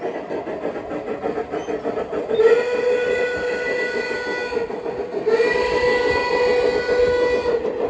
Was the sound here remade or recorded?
recorded